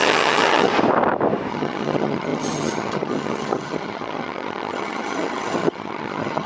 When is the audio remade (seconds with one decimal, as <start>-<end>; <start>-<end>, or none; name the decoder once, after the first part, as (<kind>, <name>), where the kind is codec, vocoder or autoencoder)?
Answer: 0.0-0.7 (vocoder, HiFi-GAN); 1.5-6.5